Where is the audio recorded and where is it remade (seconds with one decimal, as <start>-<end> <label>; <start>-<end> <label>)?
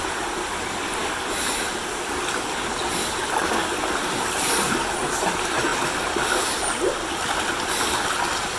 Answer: 0.0-8.6 recorded